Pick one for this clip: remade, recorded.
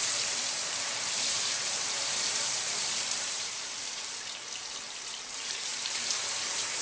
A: remade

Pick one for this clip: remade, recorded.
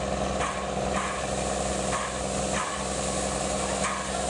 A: recorded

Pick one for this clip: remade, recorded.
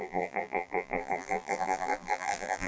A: remade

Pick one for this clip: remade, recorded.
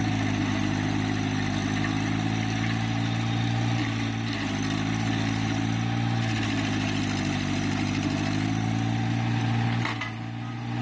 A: recorded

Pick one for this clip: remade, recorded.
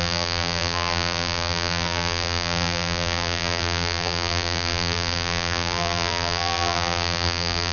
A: remade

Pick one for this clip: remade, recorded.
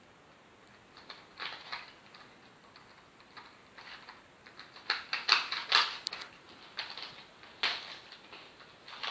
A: recorded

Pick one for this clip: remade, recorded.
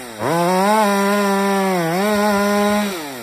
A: recorded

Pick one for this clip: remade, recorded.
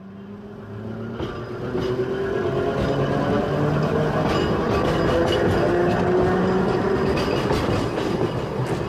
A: recorded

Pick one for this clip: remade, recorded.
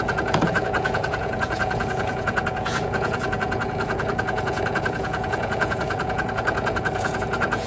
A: remade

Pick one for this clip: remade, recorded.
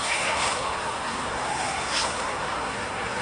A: remade